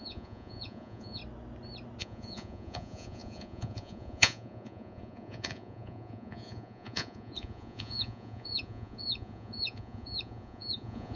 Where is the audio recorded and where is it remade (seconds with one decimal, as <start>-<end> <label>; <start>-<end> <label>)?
0.0-1.2 remade; 1.2-2.0 recorded; 2.0-11.2 remade